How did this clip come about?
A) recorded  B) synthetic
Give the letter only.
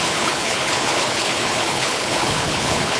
B